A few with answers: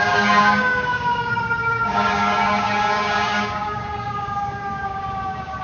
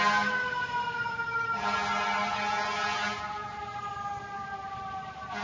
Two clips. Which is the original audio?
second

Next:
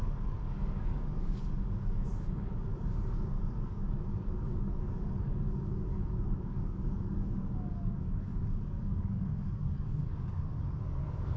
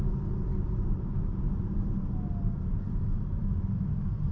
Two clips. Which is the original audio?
second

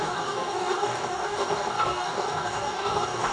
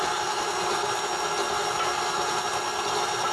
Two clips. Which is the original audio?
second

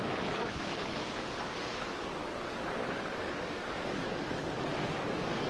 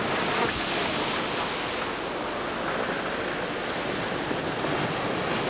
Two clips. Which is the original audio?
second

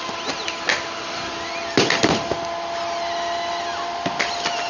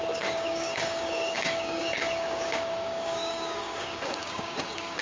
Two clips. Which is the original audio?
first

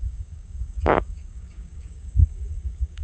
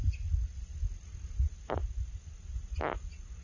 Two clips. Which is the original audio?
second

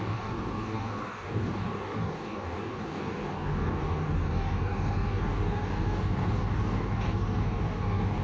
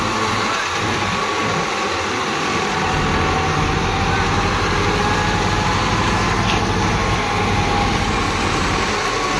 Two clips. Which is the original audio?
second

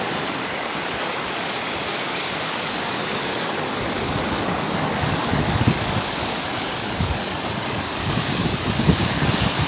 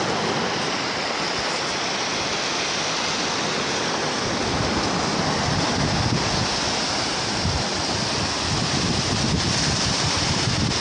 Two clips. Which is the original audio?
second